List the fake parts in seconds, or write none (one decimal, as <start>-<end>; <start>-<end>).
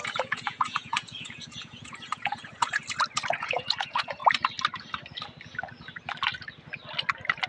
0.0-2.8; 3.3-4.2